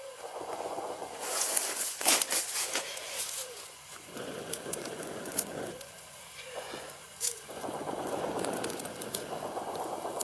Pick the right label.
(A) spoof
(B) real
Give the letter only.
A